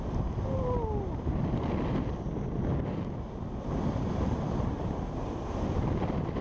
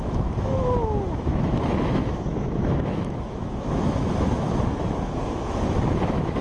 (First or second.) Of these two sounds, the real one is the first